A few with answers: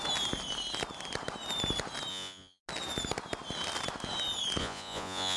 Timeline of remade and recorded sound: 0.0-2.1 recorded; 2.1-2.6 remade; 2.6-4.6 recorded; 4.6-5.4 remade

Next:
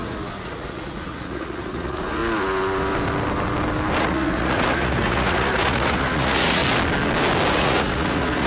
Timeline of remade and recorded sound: 0.0-2.2 remade; 2.2-4.0 recorded; 4.0-6.6 remade; 6.6-7.5 recorded; 7.5-8.5 remade

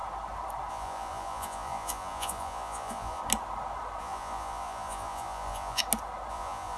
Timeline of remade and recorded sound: 0.0-0.7 recorded; 0.7-3.2 remade; 3.2-4.0 recorded; 4.0-5.8 remade; 5.8-6.3 recorded; 6.3-6.8 remade